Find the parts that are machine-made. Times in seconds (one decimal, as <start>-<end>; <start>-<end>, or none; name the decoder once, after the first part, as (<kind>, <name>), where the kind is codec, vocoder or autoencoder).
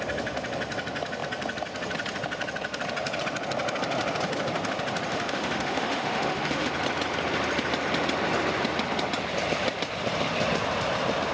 5.1-6.7 (autoencoder, DAC-VAE)